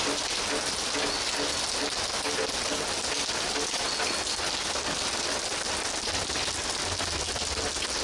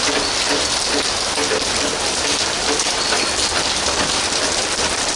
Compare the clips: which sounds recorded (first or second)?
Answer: first